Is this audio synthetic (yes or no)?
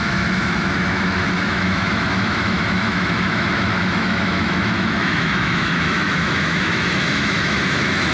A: yes